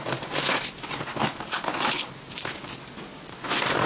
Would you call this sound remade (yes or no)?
no